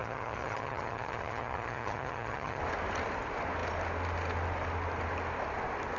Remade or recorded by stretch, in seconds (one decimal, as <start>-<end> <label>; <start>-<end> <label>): 0.0-2.6 remade; 2.6-6.0 recorded